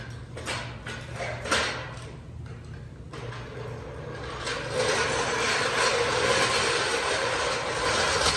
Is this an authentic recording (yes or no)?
yes